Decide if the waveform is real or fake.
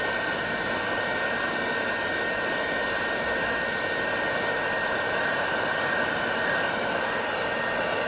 fake